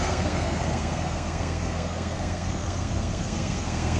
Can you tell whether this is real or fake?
fake